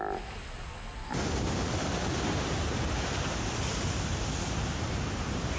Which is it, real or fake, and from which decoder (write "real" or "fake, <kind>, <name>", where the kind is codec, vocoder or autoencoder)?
real